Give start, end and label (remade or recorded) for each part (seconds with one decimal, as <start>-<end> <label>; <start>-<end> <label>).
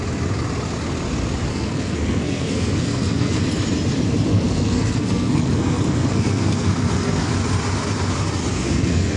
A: 0.0-1.5 recorded; 1.5-3.4 remade; 3.4-4.3 recorded; 4.3-7.3 remade; 7.3-8.5 recorded; 8.5-9.2 remade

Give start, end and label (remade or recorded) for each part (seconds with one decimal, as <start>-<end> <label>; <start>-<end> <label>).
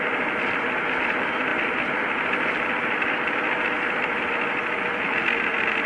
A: 0.0-5.9 recorded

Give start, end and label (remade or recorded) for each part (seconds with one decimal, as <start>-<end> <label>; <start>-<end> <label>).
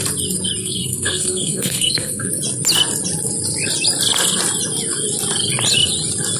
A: 0.0-0.6 recorded; 0.6-2.3 remade; 2.3-6.4 recorded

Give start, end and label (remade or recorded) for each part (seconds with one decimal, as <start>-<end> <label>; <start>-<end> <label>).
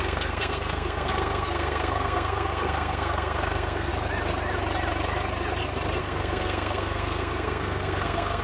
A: 0.0-3.9 remade; 3.9-6.0 recorded; 6.0-8.4 remade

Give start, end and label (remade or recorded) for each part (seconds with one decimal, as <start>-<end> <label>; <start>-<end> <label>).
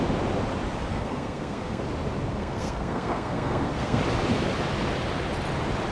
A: 0.0-0.9 recorded; 0.9-1.8 remade; 1.8-2.4 recorded; 2.4-4.0 remade; 4.0-5.9 recorded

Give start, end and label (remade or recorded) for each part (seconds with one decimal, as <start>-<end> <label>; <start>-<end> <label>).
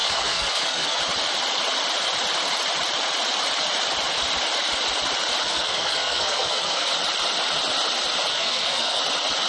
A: 0.0-1.0 remade; 1.0-5.4 recorded; 5.4-6.9 remade; 6.9-8.3 recorded; 8.3-9.0 remade; 9.0-9.5 recorded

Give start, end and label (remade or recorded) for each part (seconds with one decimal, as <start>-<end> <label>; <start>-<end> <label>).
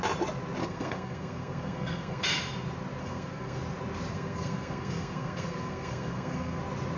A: 0.0-0.6 recorded; 0.6-2.3 remade; 2.3-3.0 recorded; 3.0-3.6 remade; 3.6-4.1 recorded; 4.1-6.6 remade; 6.6-7.0 recorded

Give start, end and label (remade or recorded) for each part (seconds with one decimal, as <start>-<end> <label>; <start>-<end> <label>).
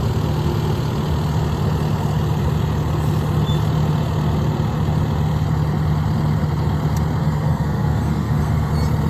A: 0.0-7.2 recorded; 7.2-8.7 remade; 8.7-9.1 recorded